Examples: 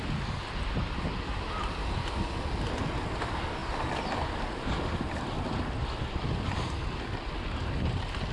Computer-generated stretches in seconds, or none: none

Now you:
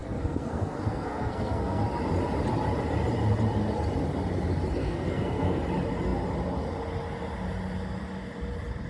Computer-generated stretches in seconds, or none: 0.0-1.8 (codec, SNAC); 4.8-5.6

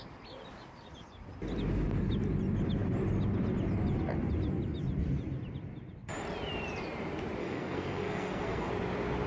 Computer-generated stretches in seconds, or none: 7.4-8.7 (codec, SNAC)